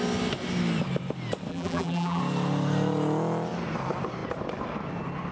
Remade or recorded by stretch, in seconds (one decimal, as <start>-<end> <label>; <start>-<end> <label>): 0.0-1.5 recorded; 1.5-2.2 remade; 2.2-5.3 recorded